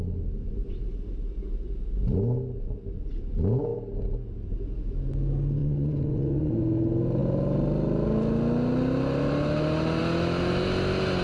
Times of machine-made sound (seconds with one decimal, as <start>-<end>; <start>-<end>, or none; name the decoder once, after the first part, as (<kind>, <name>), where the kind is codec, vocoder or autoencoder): 5.6-6.6 (vocoder, Vocos)